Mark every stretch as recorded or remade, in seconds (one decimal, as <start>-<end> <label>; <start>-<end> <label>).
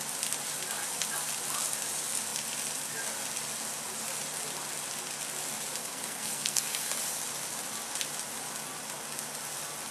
0.0-5.8 recorded; 5.8-7.0 remade; 7.0-9.9 recorded